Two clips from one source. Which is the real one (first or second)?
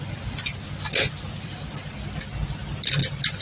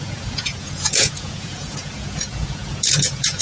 first